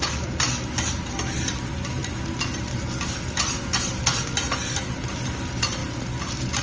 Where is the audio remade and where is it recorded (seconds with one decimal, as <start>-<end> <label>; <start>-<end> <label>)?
0.0-6.6 recorded